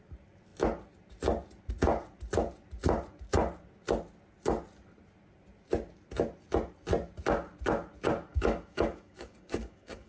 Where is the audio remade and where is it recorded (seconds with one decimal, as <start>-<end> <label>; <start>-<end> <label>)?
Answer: 0.0-8.3 recorded; 8.3-10.1 remade